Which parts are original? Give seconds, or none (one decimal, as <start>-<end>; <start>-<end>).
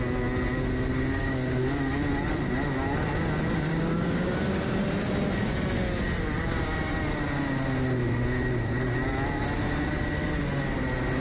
0.0-1.2; 2.0-3.7; 4.7-11.2